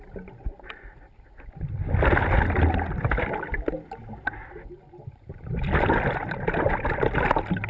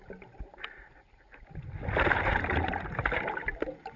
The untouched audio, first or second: first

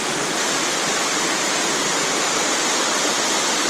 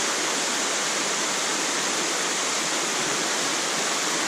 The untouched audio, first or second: first